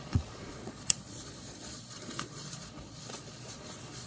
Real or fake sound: fake